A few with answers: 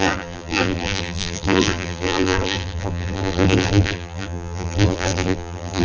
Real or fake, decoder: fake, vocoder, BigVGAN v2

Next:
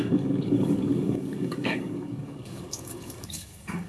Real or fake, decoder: fake, codec, DAC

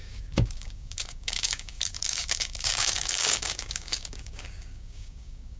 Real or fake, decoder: fake, codec, DAC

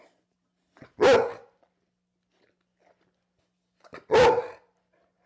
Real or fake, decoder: real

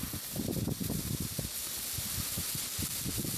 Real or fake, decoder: real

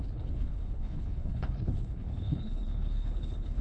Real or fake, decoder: fake, codec, HILCodec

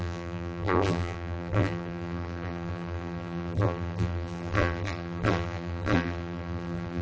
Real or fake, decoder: fake, vocoder, BigVGAN v2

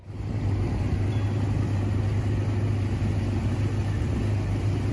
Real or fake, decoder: real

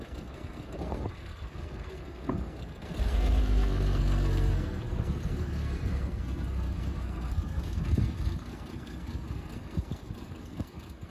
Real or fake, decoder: fake, codec, SNAC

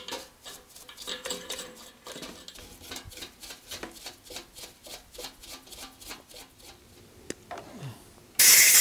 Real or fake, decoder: real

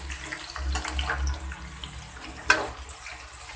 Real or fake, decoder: real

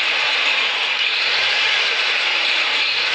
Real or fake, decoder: fake, vocoder, Vocos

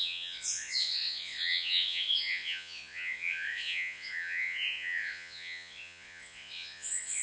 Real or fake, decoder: fake, vocoder, Vocos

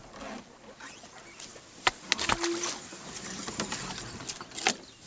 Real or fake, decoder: real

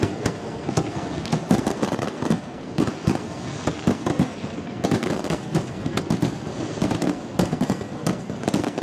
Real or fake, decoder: fake, codec, SNAC